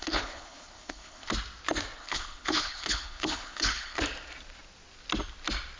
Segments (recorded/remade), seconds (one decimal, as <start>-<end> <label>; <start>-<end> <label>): 0.0-1.3 remade; 1.3-2.0 recorded; 2.0-4.0 remade; 4.0-5.8 recorded